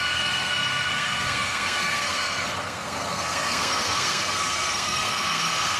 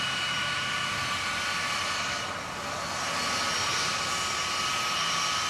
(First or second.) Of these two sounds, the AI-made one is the first